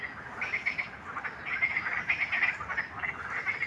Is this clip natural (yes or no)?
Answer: yes